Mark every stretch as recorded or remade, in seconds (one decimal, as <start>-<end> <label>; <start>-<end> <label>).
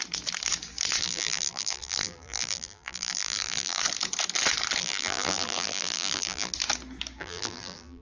0.0-1.0 recorded; 1.0-3.8 remade; 3.8-4.8 recorded; 4.8-6.5 remade; 6.5-7.2 recorded; 7.2-8.0 remade